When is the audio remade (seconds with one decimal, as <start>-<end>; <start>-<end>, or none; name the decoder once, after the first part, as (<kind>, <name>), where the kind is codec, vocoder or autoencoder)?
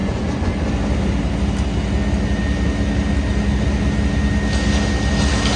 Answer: 0.0-0.7 (vocoder, Vocos)